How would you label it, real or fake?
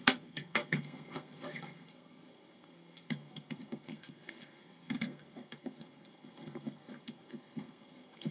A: fake